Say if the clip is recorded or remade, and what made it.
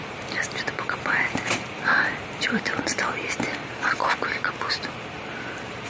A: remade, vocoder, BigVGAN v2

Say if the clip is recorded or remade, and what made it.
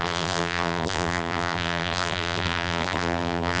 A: remade, vocoder, BigVGAN v2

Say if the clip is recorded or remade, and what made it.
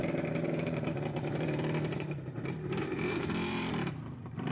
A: remade, vocoder, BigVGAN v2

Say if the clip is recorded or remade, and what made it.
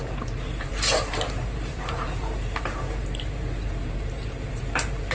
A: remade, vocoder, BigVGAN v2